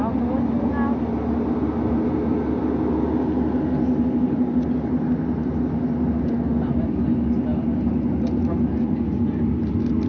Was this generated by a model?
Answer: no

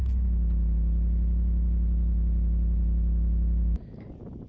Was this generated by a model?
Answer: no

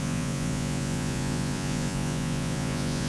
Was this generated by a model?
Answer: yes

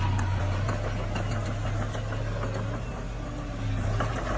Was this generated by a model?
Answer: no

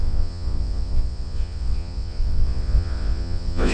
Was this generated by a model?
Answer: yes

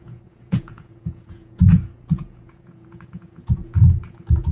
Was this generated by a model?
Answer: yes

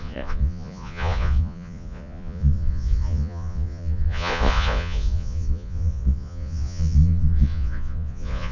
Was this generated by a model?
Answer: yes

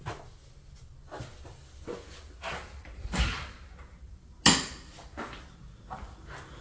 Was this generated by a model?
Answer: no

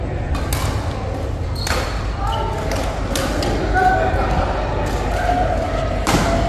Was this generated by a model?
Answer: no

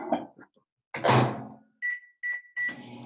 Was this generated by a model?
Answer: no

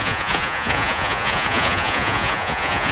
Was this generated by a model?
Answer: yes